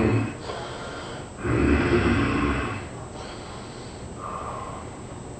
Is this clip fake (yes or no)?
no